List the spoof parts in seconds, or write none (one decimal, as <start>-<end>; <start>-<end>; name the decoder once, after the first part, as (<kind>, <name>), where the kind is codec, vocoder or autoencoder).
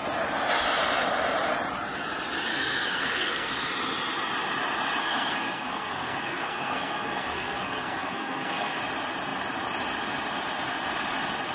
2.5-3.7 (codec, SNAC); 5.0-8.8